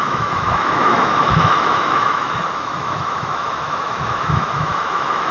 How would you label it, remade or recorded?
remade